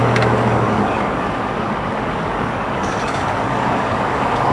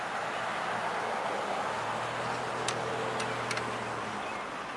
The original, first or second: second